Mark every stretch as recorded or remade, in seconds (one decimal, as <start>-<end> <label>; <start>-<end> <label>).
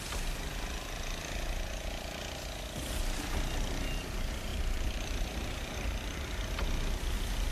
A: 0.0-4.5 recorded; 4.5-6.2 remade; 6.2-7.5 recorded